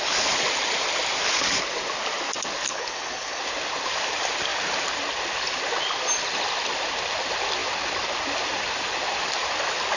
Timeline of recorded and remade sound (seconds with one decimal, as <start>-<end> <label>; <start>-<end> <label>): 0.0-2.7 recorded; 2.7-3.4 remade; 3.4-10.0 recorded